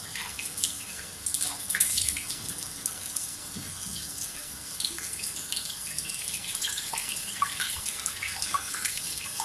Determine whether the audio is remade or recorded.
remade